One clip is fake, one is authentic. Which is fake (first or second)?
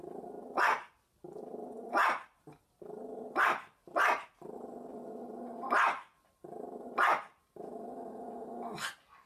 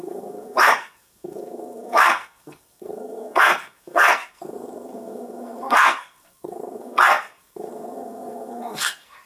second